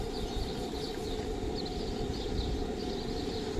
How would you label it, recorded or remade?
recorded